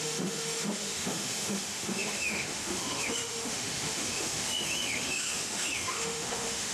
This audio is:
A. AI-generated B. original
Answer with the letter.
A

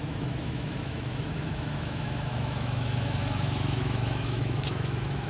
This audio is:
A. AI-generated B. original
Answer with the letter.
A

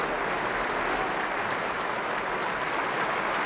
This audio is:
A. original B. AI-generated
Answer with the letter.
A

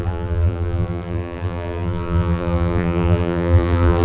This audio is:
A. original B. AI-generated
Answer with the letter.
B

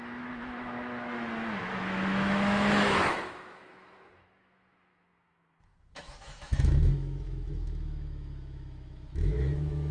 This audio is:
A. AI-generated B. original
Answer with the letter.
A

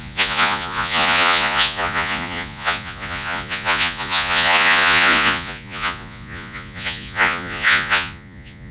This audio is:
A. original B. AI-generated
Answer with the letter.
B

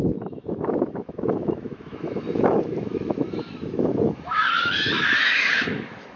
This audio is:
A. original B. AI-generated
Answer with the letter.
B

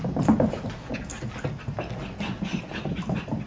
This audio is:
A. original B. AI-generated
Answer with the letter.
A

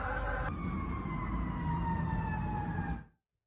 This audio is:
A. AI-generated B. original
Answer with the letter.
B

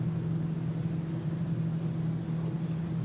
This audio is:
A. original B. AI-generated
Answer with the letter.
A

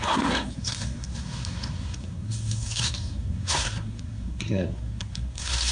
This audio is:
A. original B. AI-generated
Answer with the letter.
B